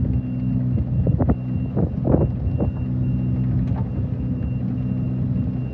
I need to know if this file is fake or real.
real